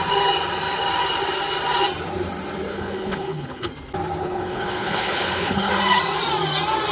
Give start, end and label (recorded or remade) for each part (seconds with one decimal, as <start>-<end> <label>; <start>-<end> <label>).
0.0-2.7 recorded; 2.7-3.7 remade; 3.7-4.2 recorded; 4.2-5.7 remade; 5.7-6.9 recorded